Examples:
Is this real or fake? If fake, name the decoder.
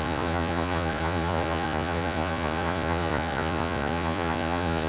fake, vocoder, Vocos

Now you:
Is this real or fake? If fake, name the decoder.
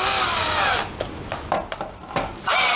real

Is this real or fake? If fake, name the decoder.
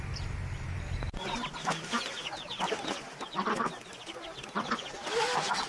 real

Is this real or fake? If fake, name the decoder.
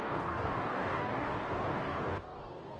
fake, codec, DAC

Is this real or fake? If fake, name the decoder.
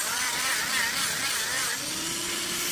real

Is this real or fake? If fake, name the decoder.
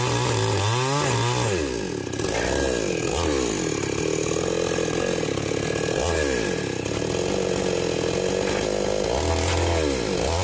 real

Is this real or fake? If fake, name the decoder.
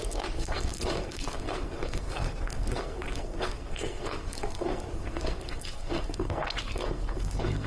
fake, codec, SNAC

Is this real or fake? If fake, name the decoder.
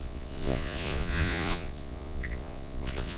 fake, vocoder, Vocos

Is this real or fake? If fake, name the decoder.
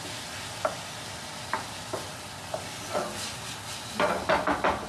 real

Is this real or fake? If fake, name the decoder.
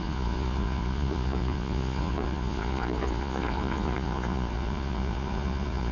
fake, vocoder, Vocos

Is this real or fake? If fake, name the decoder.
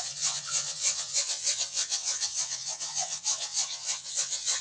fake, vocoder, WaveNeXt